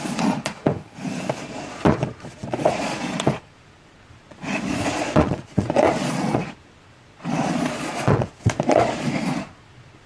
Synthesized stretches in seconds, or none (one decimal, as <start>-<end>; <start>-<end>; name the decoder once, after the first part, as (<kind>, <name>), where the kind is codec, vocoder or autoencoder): 0.0-0.7 (vocoder, Vocos); 1.4-10.1